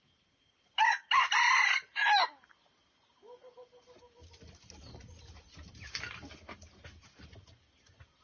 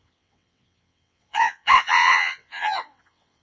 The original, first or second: first